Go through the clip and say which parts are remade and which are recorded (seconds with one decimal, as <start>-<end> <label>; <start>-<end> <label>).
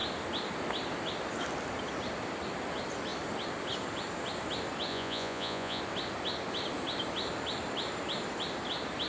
0.0-4.9 recorded; 4.9-5.8 remade; 5.8-9.1 recorded